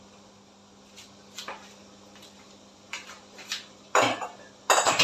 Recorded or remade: recorded